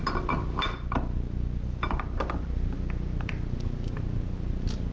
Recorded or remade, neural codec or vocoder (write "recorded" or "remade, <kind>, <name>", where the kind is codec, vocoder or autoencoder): recorded